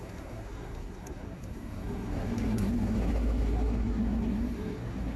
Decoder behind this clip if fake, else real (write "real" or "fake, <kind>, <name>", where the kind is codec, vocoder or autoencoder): fake, codec, SNAC